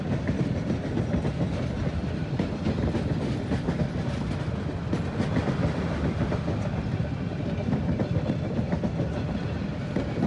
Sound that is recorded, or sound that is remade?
recorded